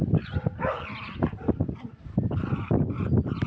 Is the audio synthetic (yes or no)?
no